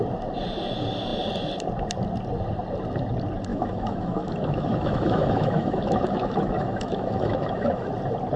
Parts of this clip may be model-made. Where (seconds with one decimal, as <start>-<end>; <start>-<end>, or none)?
3.5-7.9